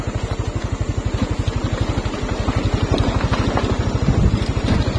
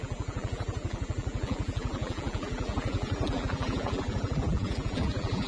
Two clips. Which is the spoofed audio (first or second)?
second